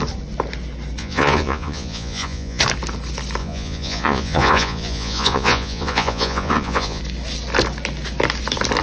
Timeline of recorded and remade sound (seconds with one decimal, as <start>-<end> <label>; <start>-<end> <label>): 0.0-1.0 recorded; 1.0-2.6 remade; 2.6-3.4 recorded; 3.4-7.0 remade; 7.0-8.8 recorded